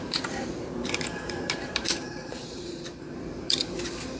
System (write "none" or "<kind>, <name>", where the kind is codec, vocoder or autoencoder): vocoder, BigVGAN v2